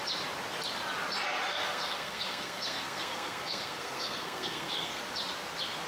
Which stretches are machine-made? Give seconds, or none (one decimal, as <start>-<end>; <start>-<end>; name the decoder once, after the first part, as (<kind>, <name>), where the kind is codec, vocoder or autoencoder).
1.5-5.0 (codec, SNAC)